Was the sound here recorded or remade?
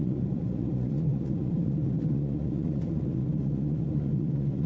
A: remade